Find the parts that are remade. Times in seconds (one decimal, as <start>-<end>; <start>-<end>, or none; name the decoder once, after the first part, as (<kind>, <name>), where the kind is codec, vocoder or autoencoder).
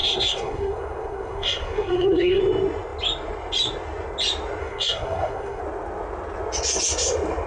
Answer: 0.0-2.4 (codec, SNAC); 4.6-5.6